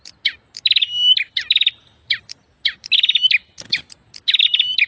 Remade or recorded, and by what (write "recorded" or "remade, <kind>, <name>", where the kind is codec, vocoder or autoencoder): recorded